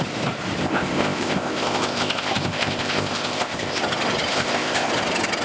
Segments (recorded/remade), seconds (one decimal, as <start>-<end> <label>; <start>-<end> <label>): 0.0-0.6 recorded; 0.6-3.8 remade; 3.8-4.3 recorded; 4.3-4.9 remade; 4.9-5.4 recorded